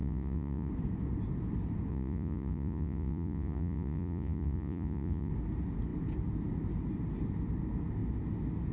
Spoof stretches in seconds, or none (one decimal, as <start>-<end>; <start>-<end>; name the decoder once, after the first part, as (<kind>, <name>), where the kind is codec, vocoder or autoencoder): 0.0-0.7 (vocoder, Vocos); 1.9-5.3